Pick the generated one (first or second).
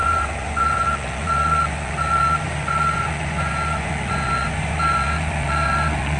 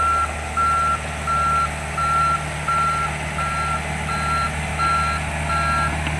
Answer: first